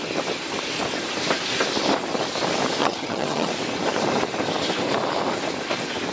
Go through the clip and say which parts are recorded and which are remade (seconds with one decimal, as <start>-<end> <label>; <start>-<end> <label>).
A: 0.0-2.8 recorded; 2.8-3.5 remade; 3.5-6.1 recorded